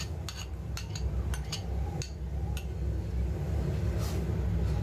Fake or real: real